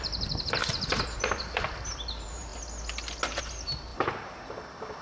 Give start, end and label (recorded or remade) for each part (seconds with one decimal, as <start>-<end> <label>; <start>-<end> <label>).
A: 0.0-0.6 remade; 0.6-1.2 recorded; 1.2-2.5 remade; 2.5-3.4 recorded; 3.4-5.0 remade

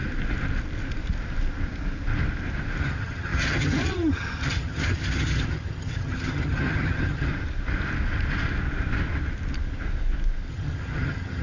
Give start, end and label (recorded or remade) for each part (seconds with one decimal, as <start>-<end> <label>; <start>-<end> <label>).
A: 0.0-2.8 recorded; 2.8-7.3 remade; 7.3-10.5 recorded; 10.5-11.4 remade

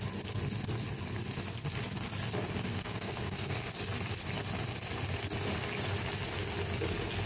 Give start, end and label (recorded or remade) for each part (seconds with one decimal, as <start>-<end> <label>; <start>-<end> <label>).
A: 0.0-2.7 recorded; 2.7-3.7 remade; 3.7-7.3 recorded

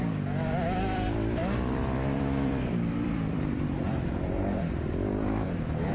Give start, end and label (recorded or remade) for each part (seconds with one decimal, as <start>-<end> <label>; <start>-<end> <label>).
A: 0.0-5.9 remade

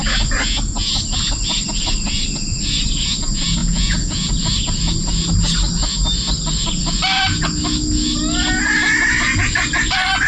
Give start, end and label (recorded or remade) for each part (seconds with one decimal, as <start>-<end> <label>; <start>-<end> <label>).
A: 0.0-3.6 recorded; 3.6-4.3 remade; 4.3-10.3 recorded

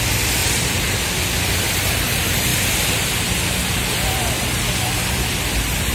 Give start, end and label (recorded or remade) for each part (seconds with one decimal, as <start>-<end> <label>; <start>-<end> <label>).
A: 0.0-0.4 recorded; 0.4-1.0 remade; 1.0-5.9 recorded

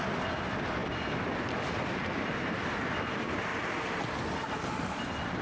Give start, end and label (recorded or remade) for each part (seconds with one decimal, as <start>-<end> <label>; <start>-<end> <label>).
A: 0.0-5.4 recorded